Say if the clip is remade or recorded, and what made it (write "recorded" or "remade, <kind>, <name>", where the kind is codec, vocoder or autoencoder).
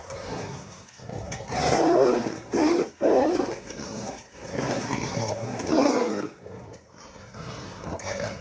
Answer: remade, codec, SNAC